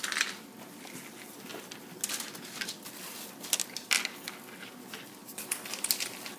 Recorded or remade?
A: recorded